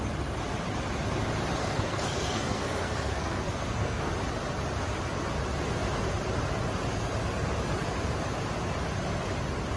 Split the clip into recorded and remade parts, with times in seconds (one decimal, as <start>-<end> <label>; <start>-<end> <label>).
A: 0.0-1.6 recorded; 1.6-4.1 remade; 4.1-9.8 recorded